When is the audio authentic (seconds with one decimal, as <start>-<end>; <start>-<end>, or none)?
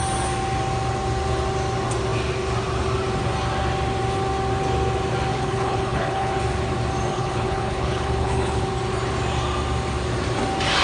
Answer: 0.0-5.3; 6.3-7.1; 8.6-10.8